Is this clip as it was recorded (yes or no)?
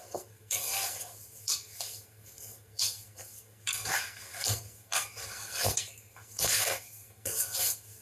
no